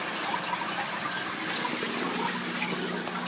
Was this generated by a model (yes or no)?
no